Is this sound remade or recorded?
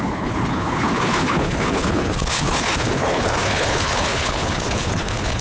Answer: remade